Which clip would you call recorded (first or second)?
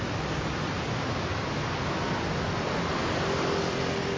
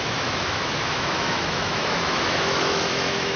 first